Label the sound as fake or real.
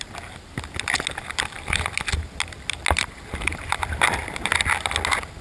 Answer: real